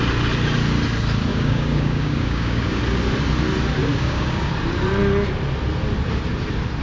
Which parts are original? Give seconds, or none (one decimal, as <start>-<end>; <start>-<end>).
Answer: 0.0-1.3; 2.8-3.9; 4.5-6.8